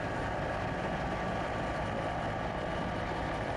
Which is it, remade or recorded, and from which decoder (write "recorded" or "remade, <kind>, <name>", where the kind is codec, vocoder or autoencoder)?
recorded